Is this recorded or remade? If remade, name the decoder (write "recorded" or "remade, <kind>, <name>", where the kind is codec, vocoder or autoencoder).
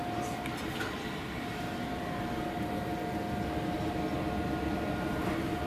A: recorded